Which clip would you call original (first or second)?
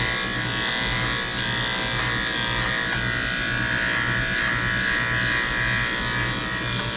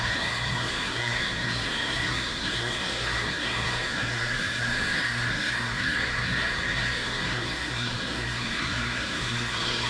first